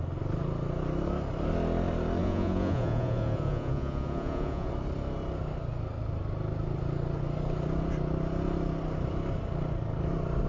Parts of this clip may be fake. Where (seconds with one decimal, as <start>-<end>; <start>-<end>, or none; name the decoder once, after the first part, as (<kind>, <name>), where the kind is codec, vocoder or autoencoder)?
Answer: 2.2-4.7 (vocoder, Vocos)